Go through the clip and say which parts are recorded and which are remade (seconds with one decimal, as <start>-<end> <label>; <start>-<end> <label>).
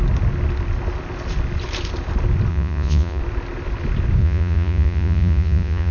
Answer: 0.0-2.5 recorded; 2.5-3.2 remade; 3.2-4.2 recorded; 4.2-5.9 remade